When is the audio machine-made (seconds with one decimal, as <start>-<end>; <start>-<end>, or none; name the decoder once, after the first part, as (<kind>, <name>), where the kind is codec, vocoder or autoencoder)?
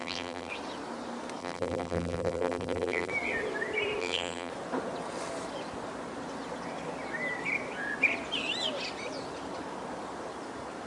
0.0-0.5 (vocoder, BigVGAN v2); 1.4-3.1; 4.0-4.5